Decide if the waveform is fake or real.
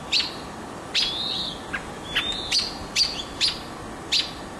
real